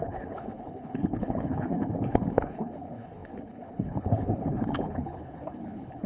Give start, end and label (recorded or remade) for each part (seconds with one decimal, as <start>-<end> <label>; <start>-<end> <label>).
0.0-6.1 remade